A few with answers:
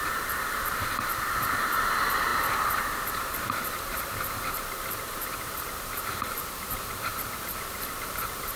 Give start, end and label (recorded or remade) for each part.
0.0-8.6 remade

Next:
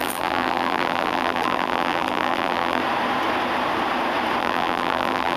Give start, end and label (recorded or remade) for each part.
0.0-2.8 remade; 2.8-4.4 recorded; 4.4-5.4 remade

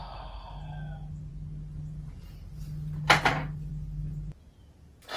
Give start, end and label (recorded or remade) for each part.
0.0-5.2 recorded

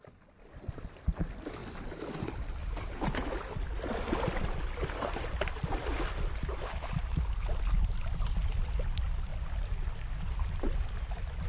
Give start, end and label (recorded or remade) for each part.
0.0-1.6 remade; 1.6-2.1 recorded; 2.1-5.8 remade; 5.8-7.5 recorded; 7.5-9.3 remade; 9.3-10.5 recorded; 10.5-11.5 remade

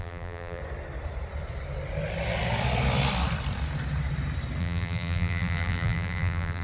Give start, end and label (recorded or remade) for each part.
0.0-0.6 remade; 0.6-4.6 recorded; 4.6-6.6 remade